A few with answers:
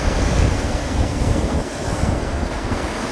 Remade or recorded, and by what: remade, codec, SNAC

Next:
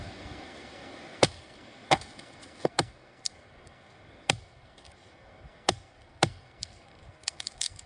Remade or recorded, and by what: remade, codec, SNAC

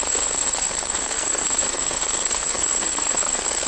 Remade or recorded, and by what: remade, codec, SNAC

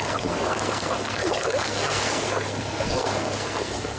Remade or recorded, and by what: remade, codec, SNAC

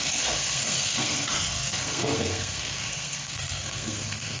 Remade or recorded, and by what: remade, codec, SNAC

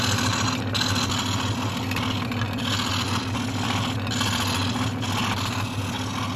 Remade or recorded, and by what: recorded